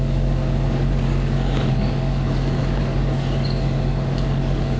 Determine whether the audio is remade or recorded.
remade